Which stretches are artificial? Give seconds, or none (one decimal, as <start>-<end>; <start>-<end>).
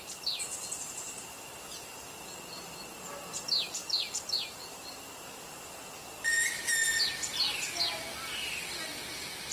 3.8-4.8